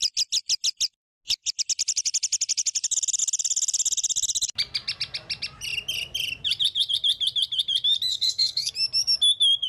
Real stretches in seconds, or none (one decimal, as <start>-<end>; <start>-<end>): 0.0-8.1; 8.7-9.7